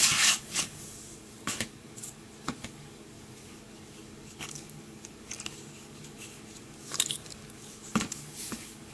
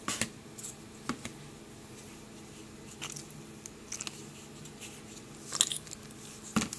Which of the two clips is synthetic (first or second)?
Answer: first